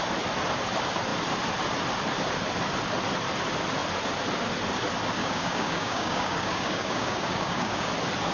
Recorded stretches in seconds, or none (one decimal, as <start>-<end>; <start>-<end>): 0.0-5.2; 7.9-8.3